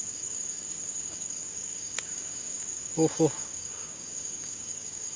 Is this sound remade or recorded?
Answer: remade